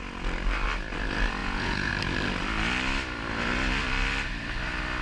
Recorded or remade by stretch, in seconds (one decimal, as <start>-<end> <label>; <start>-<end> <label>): 0.0-1.4 recorded; 1.4-1.9 remade; 1.9-5.0 recorded